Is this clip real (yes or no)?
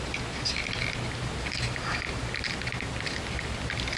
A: yes